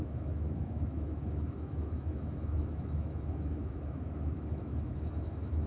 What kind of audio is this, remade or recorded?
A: remade